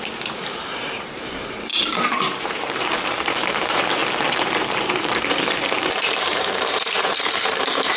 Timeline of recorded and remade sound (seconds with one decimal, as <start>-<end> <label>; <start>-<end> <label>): 0.0-4.0 remade; 4.0-4.6 recorded; 4.6-8.0 remade